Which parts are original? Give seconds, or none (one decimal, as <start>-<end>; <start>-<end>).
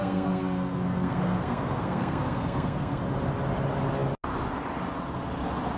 3.0-5.8